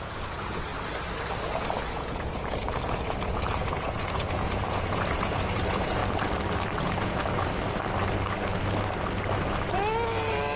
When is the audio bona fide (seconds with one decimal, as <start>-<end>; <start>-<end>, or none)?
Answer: 0.7-1.4; 6.0-6.8; 7.5-10.6